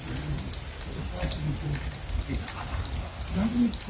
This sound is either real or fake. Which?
real